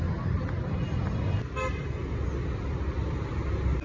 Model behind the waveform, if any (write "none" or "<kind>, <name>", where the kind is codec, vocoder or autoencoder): none